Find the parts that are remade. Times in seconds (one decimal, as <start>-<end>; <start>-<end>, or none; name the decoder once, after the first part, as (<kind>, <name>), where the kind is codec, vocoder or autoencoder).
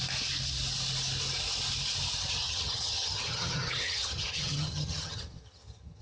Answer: 2.4-6.0 (vocoder, HiFi-GAN)